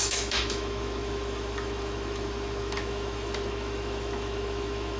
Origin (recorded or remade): remade